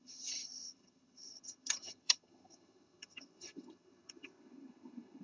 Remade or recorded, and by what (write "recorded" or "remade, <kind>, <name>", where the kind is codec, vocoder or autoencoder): remade, vocoder, HiFi-GAN